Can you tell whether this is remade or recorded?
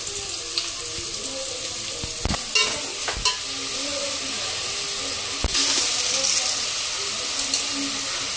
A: recorded